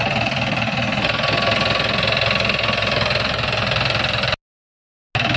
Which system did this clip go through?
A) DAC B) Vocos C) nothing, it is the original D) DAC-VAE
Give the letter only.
C